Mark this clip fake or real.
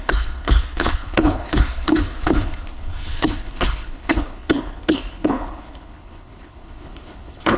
fake